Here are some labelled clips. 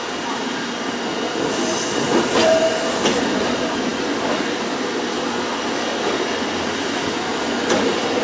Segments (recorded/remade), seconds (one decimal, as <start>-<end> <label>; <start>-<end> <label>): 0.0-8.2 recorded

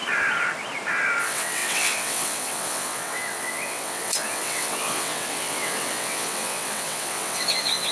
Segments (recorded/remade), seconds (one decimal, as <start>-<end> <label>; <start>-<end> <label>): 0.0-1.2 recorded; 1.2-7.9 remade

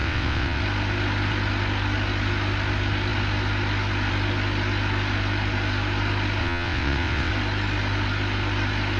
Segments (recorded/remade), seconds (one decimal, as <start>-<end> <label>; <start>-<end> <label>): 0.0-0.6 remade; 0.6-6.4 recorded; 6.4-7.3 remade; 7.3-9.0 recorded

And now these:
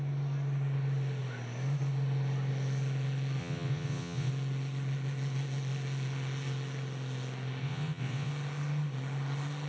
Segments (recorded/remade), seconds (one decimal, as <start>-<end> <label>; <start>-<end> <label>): 0.0-3.4 recorded; 3.4-4.3 remade; 4.3-7.6 recorded; 7.6-8.3 remade; 8.3-9.7 recorded

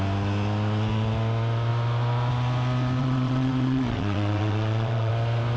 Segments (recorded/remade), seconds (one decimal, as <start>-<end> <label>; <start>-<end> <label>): 0.0-3.0 recorded; 3.0-5.1 remade; 5.1-5.6 recorded

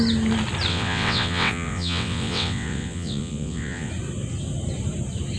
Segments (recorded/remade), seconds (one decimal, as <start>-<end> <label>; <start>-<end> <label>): 0.0-0.7 recorded; 0.7-3.9 remade; 3.9-5.4 recorded

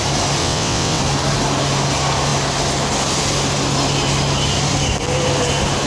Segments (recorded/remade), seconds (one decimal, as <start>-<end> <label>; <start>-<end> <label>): 0.0-0.4 recorded; 0.4-1.0 remade; 1.0-5.9 recorded